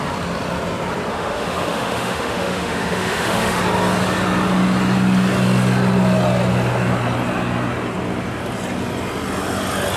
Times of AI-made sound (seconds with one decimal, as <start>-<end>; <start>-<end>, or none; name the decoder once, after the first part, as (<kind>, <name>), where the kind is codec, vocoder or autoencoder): 1.1-3.6 (autoencoder, DAC-VAE)